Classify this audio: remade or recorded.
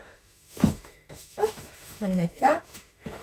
remade